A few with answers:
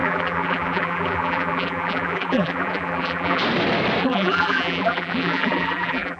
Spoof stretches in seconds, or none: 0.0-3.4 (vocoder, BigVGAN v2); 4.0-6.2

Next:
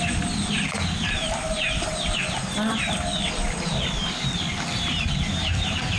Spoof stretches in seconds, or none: 0.0-6.0 (vocoder, BigVGAN v2)

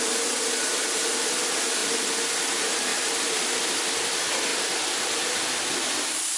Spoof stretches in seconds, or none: 2.9-3.9 (vocoder, BigVGAN v2); 4.5-5.1

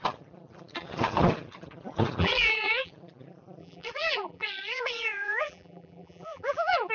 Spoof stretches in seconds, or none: 2.2-2.9 (vocoder, BigVGAN v2); 3.6-6.9

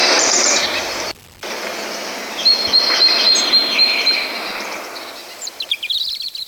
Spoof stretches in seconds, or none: 0.6-6.5 (vocoder, BigVGAN v2)

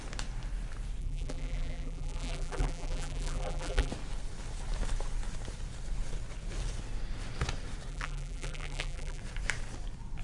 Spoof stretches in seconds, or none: 1.0-3.9 (vocoder, BigVGAN v2); 7.9-9.2

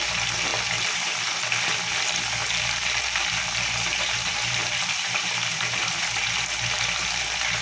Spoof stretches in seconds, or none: 2.4-5.9 (vocoder, BigVGAN v2)